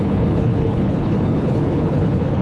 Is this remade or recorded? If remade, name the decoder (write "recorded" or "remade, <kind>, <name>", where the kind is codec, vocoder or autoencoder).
remade, codec, HILCodec